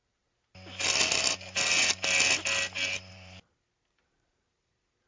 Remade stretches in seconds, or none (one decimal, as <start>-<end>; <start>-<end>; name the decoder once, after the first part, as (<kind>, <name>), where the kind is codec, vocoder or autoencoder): 3.1-5.1 (vocoder, BigVGAN v2)